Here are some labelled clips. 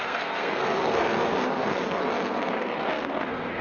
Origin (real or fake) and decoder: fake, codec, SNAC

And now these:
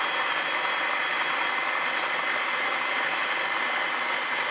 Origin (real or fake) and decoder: real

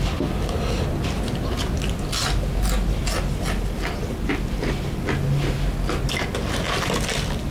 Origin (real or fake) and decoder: real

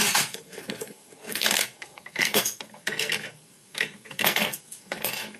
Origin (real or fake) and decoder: fake, codec, SNAC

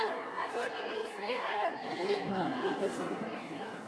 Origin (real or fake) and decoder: fake, codec, SNAC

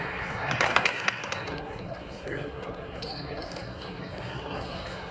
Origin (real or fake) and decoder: fake, codec, SNAC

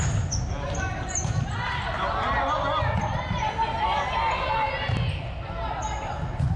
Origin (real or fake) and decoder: real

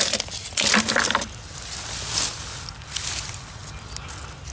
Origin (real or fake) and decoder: real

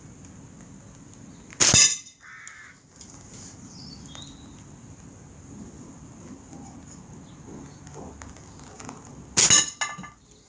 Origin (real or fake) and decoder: real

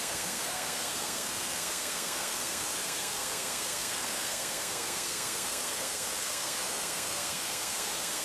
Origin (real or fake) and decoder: fake, codec, SNAC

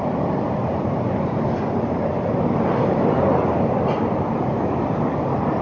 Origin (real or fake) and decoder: real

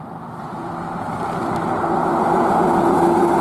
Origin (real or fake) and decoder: real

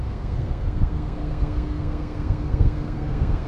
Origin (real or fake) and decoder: fake, codec, SNAC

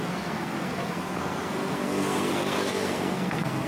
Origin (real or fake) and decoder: fake, codec, SNAC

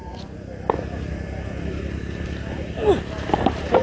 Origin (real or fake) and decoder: real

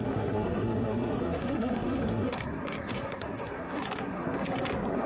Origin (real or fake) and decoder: fake, codec, SNAC